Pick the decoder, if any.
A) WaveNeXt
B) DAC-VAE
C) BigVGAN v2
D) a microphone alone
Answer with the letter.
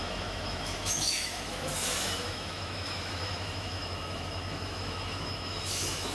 B